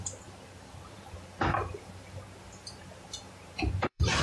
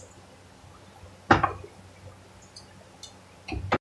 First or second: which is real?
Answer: second